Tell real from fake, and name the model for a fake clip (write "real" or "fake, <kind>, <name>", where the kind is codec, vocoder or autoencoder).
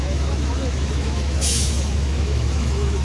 fake, autoencoder, DAC-VAE